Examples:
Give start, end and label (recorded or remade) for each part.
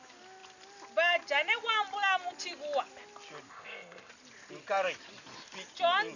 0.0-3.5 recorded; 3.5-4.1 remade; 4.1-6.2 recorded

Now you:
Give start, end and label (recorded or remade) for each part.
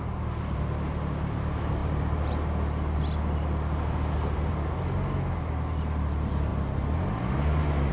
0.0-7.9 recorded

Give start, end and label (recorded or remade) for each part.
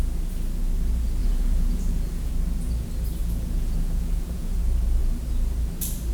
0.0-1.2 recorded; 1.2-2.3 remade; 2.3-3.2 recorded; 3.2-4.6 remade; 4.6-6.1 recorded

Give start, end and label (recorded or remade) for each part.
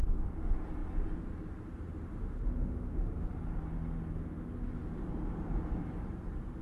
0.0-2.2 recorded; 2.2-3.3 remade; 3.3-6.6 recorded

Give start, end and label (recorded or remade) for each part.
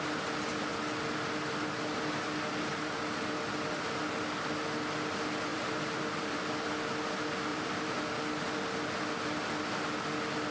0.0-5.5 recorded; 5.5-6.4 remade; 6.4-7.5 recorded; 7.5-8.0 remade; 8.0-10.5 recorded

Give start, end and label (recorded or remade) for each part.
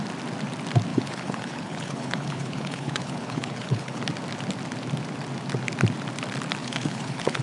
0.0-0.9 recorded; 0.9-4.0 remade; 4.0-6.6 recorded; 6.6-7.4 remade